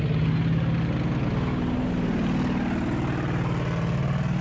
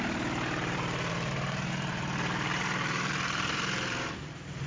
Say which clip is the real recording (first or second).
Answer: first